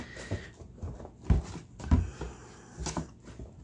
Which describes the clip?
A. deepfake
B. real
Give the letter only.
B